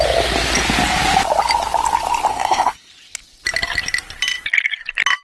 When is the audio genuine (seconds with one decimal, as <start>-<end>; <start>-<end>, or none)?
0.0-2.3; 2.9-5.2